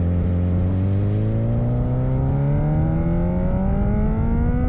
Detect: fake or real real